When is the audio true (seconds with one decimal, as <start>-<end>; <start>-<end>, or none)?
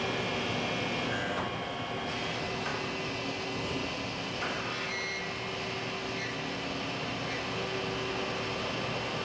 0.0-9.2